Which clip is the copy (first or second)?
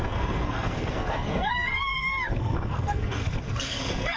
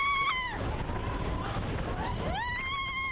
first